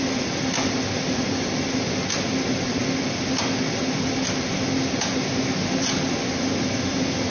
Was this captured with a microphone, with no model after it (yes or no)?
yes